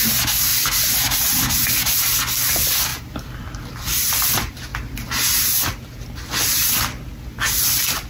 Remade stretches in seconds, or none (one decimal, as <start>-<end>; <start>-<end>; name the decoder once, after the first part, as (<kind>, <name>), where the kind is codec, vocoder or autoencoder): 2.9-4.1 (vocoder, BigVGAN v2)

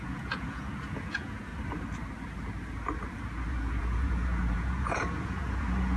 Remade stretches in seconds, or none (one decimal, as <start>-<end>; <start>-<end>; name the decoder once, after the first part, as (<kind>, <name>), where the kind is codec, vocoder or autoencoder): 0.0-1.5 (vocoder, Vocos); 3.5-6.0

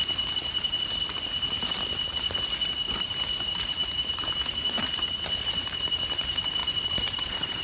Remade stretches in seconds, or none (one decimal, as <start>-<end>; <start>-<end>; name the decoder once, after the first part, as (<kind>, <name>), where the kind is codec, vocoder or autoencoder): 2.5-7.6 (vocoder, BigVGAN v2)